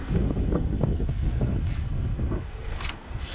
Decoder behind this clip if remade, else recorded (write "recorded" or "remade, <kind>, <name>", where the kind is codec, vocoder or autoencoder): remade, codec, SNAC